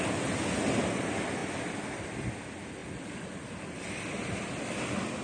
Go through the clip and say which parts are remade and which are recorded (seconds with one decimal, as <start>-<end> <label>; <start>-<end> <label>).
0.0-5.2 recorded